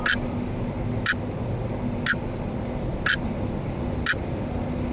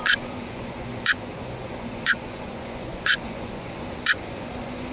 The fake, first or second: second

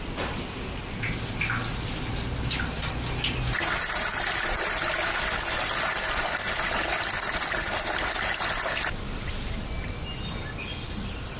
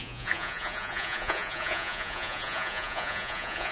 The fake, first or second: second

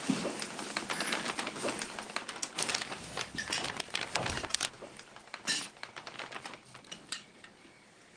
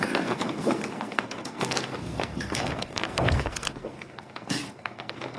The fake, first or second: second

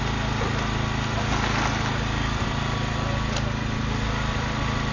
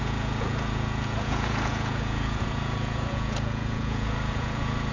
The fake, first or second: second